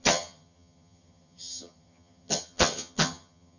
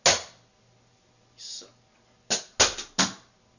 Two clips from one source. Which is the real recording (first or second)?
second